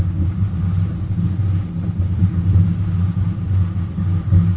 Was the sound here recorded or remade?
recorded